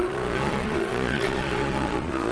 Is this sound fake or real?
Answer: fake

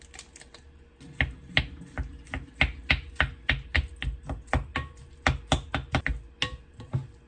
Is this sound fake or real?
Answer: real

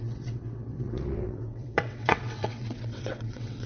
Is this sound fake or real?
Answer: fake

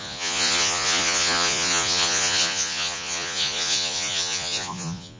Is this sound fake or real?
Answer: fake